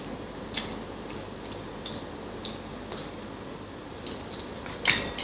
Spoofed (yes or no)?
no